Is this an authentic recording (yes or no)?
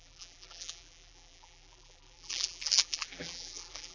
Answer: no